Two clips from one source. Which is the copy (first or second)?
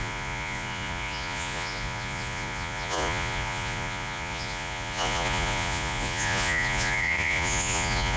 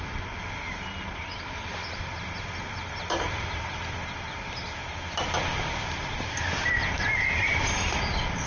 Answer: first